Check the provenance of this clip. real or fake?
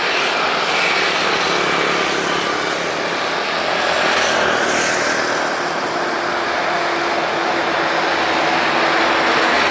real